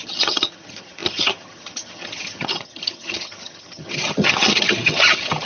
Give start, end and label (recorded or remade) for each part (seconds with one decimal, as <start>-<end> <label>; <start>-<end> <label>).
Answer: 0.0-5.5 remade